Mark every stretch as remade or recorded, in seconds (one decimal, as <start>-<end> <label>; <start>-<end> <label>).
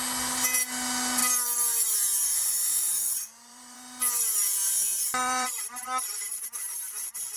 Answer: 0.0-1.2 recorded; 1.2-5.6 remade; 5.6-7.4 recorded